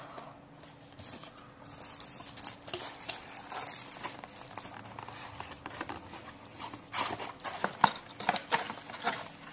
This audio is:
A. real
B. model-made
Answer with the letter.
A